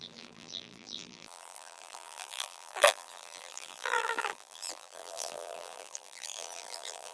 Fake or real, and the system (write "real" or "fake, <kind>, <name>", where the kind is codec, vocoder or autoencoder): fake, vocoder, BigVGAN v2